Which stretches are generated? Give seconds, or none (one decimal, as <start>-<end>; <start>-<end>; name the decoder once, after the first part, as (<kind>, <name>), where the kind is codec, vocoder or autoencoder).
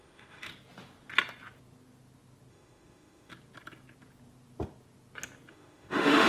0.0-0.5 (autoencoder, DAC-VAE); 2.5-3.3; 5.5-6.3